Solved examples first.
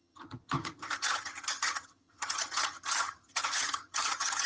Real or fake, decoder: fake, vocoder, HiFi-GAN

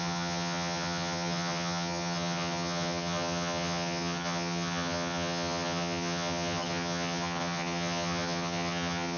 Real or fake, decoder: fake, vocoder, HiFi-GAN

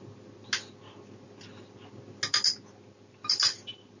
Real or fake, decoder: real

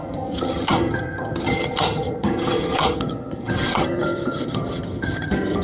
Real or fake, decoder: fake, vocoder, HiFi-GAN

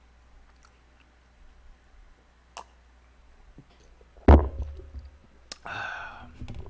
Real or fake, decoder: real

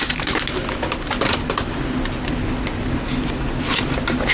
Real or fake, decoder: real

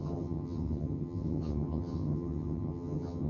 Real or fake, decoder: fake, vocoder, HiFi-GAN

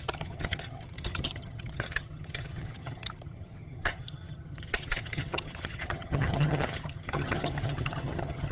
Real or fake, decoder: fake, vocoder, HiFi-GAN